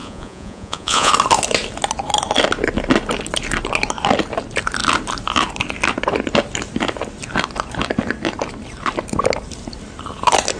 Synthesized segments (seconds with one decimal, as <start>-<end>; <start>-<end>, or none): 0.0-1.1